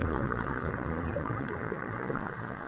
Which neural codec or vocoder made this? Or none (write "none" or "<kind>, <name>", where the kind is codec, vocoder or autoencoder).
vocoder, Vocos